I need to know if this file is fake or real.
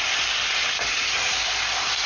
real